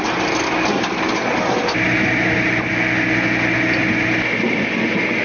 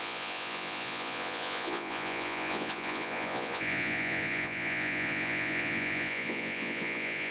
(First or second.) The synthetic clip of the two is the second